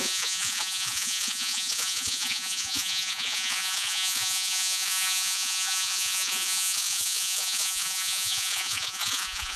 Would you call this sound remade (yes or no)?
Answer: yes